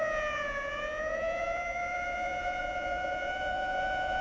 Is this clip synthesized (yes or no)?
yes